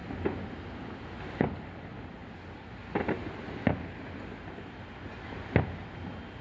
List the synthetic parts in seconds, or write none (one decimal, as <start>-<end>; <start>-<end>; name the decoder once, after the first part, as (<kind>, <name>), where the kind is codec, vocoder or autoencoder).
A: none